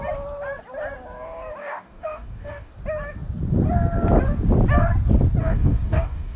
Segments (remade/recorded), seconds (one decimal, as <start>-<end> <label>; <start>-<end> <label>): 0.0-1.6 recorded; 1.6-2.7 remade; 2.7-5.4 recorded; 5.4-6.4 remade